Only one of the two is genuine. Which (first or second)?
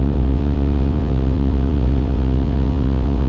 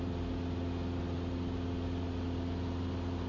second